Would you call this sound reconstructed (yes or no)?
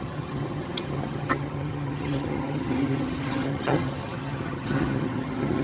yes